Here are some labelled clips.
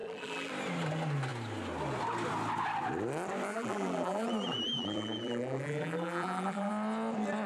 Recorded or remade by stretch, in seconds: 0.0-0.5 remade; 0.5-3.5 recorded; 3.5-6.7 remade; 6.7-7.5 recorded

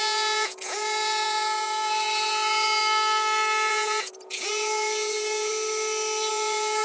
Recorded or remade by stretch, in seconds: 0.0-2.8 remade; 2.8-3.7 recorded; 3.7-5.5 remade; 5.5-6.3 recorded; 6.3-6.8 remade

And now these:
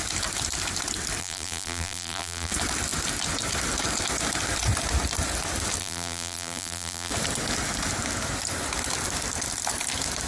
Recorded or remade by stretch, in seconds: 0.0-1.2 recorded; 1.2-2.5 remade; 2.5-5.8 recorded; 5.8-7.1 remade; 7.1-10.3 recorded

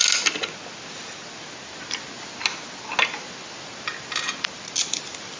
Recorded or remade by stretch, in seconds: 0.0-5.4 recorded

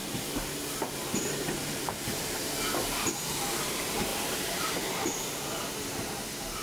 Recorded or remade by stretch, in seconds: 0.0-2.5 remade; 2.5-4.1 recorded; 4.1-6.0 remade; 6.0-6.6 recorded